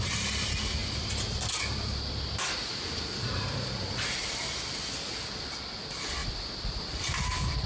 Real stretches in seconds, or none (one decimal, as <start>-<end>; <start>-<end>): 0.0-0.8; 4.3-6.2; 7.1-7.7